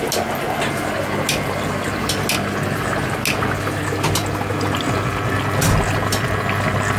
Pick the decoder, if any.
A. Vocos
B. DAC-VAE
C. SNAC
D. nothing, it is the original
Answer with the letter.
D